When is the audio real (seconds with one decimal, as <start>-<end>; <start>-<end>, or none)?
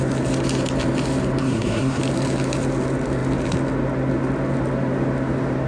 0.0-1.4; 2.0-5.7